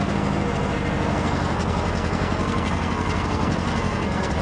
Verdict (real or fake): fake